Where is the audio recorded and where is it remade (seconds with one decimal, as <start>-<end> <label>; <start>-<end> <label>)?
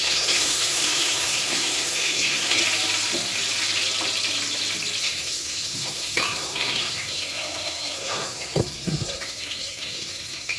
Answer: 0.0-2.6 remade; 2.6-5.0 recorded; 5.0-10.6 remade